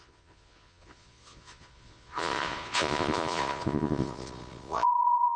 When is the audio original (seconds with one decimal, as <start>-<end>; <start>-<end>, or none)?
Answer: none